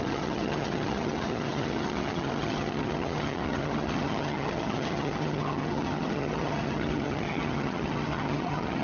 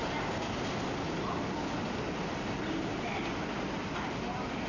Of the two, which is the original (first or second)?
second